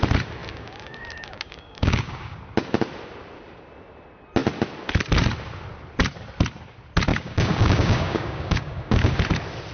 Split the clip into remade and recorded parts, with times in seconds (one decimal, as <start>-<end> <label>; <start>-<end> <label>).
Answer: 0.0-0.4 recorded; 0.4-2.4 remade; 2.4-7.1 recorded; 7.1-9.1 remade; 9.1-9.7 recorded